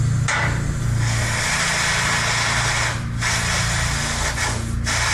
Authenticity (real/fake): real